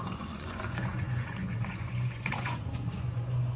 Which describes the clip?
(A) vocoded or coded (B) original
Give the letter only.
A